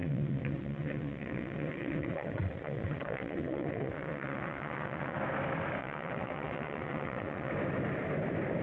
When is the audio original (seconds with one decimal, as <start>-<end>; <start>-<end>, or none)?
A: 5.2-5.8; 7.5-8.6